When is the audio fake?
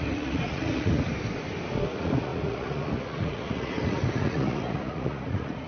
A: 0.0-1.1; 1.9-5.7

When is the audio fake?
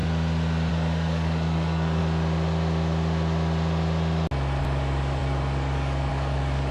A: 0.7-2.0; 4.6-6.7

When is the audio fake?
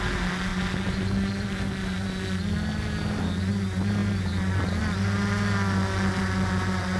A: none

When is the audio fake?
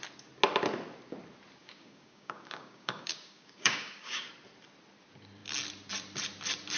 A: 1.6-4.3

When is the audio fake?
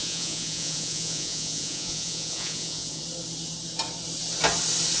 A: 0.0-3.0